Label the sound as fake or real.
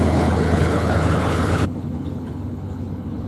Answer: fake